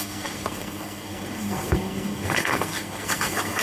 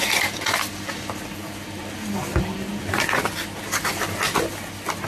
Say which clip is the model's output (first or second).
first